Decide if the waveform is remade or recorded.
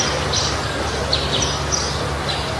recorded